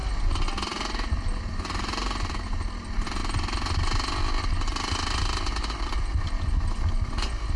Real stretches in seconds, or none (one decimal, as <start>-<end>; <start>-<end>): 0.0-7.6